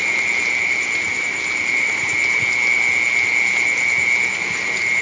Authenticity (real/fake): real